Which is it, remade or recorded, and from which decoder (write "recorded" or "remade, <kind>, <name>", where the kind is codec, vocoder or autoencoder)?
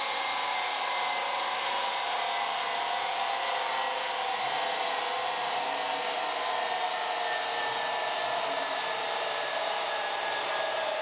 remade, vocoder, BigVGAN v2